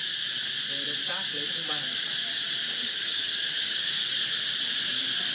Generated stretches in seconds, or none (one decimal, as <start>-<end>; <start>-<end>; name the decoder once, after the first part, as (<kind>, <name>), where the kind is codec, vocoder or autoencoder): 2.8-3.9 (vocoder, HiFi-GAN)